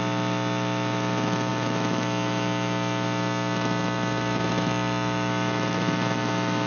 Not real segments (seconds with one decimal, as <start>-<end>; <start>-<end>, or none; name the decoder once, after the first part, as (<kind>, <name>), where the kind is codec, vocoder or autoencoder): 0.0-6.7 (autoencoder, DAC-VAE)

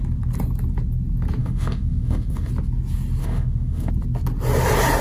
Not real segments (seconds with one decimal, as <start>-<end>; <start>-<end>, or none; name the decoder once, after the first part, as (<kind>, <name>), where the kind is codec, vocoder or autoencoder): 1.4-2.5 (autoencoder, DAC-VAE); 3.2-3.9

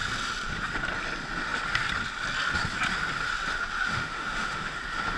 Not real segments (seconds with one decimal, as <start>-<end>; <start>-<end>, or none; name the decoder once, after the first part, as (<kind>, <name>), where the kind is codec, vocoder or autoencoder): 3.9-4.8 (autoencoder, DAC-VAE)

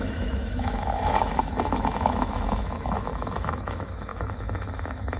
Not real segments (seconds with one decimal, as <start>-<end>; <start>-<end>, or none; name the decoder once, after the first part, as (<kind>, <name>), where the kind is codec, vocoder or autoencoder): 0.0-5.2 (autoencoder, DAC-VAE)